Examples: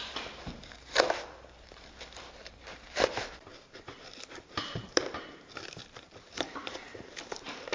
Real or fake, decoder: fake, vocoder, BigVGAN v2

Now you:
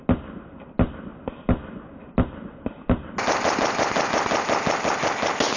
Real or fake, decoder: real